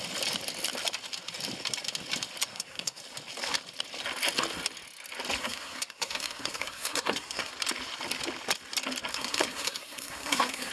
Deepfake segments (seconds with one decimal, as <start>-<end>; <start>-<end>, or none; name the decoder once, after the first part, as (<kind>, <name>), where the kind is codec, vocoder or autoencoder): 2.5-3.0 (codec, SNAC); 5.4-7.5; 9.1-10.7